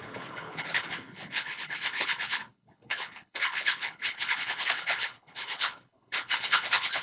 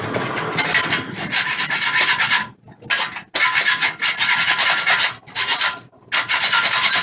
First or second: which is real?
second